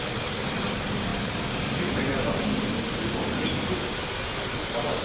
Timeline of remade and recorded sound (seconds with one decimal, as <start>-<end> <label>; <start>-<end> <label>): 0.0-5.0 recorded